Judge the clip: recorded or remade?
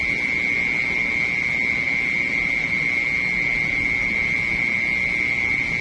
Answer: recorded